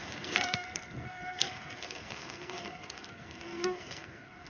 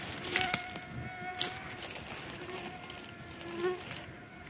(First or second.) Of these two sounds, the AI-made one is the first